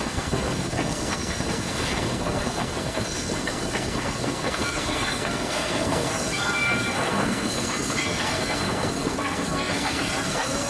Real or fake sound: fake